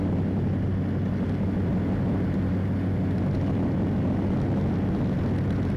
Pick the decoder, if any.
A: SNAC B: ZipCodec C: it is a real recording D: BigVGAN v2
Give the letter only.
C